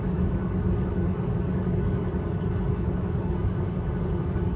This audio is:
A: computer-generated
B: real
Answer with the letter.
A